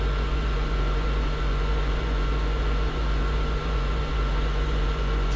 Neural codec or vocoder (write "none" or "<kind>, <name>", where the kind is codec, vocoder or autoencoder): vocoder, Vocos